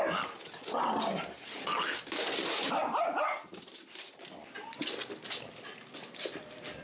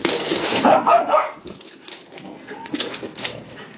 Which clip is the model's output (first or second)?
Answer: second